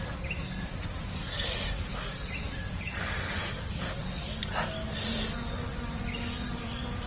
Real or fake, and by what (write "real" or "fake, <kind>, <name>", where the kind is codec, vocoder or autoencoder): real